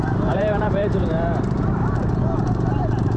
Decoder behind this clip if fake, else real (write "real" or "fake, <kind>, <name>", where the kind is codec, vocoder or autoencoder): fake, vocoder, BigVGAN v2